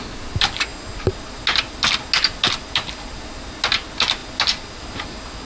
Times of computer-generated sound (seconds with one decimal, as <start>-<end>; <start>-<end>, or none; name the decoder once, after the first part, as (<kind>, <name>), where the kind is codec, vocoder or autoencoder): none